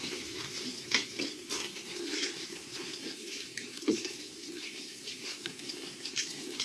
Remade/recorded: remade